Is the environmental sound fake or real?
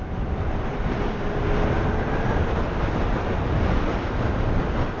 real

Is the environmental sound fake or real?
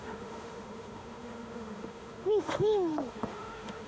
fake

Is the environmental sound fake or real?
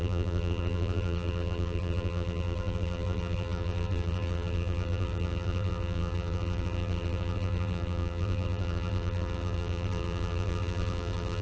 fake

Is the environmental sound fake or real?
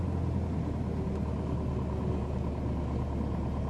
real